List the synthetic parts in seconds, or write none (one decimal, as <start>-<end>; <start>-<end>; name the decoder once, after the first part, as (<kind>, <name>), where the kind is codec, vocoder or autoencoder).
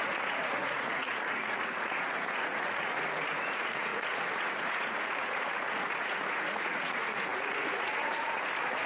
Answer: 0.0-8.9 (vocoder, Vocos)